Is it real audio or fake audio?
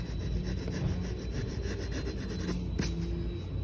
real